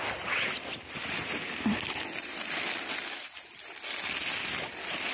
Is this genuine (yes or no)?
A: yes